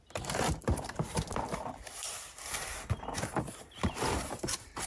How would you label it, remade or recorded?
remade